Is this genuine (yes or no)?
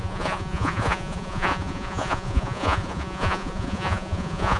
no